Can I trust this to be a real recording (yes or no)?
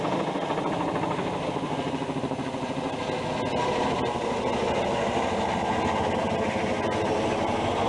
yes